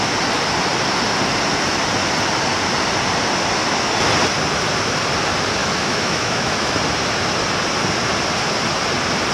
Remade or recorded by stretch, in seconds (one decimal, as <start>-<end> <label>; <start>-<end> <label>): 0.0-5.6 recorded; 5.6-6.8 remade; 6.8-9.3 recorded

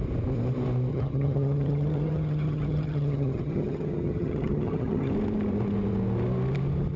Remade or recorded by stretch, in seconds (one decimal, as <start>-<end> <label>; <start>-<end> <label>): 0.0-0.9 recorded; 0.9-5.1 remade; 5.1-7.0 recorded

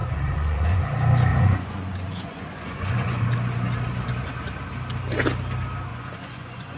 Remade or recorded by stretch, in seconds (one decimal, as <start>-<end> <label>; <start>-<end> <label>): 0.0-0.8 remade; 0.8-1.3 recorded; 1.3-3.2 remade; 3.2-5.9 recorded; 5.9-6.8 remade

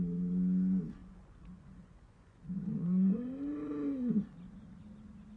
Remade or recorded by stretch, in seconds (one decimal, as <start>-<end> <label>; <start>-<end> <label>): 0.0-1.0 recorded; 1.0-4.2 remade; 4.2-5.4 recorded

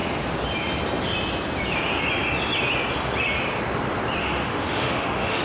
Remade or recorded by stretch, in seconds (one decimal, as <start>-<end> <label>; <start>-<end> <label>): 0.0-4.2 recorded; 4.2-5.4 remade

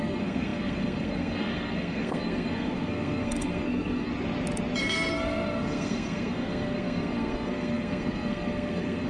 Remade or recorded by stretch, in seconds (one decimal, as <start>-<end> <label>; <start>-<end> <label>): 0.0-4.1 remade; 4.1-4.8 recorded; 4.8-9.1 remade

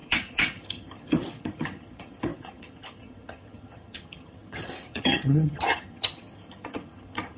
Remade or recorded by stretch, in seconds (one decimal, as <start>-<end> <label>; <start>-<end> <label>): 0.0-7.4 remade